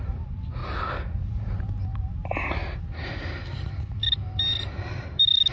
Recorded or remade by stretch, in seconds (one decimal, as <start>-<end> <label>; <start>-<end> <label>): 0.0-5.5 recorded